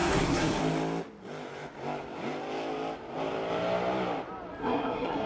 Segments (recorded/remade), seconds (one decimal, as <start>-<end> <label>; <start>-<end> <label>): 0.0-0.6 remade; 0.6-4.6 recorded; 4.6-5.3 remade